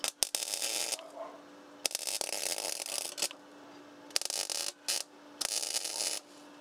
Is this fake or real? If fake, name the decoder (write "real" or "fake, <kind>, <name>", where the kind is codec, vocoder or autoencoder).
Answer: real